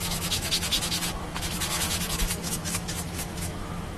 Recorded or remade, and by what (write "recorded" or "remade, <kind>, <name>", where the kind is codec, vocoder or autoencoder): remade, autoencoder, DAC-VAE